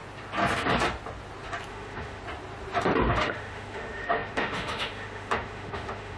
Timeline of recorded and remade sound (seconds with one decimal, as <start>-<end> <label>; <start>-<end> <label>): 0.0-1.7 recorded; 1.7-2.2 remade; 2.2-3.1 recorded; 3.1-6.2 remade